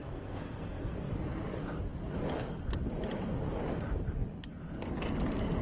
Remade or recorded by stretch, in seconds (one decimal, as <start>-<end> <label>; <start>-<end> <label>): 0.0-1.1 remade; 1.1-5.6 recorded